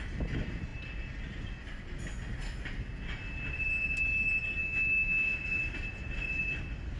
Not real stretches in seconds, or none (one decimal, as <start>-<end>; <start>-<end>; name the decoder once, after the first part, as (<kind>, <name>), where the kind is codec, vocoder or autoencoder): 4.6-5.6 (autoencoder, DAC-VAE)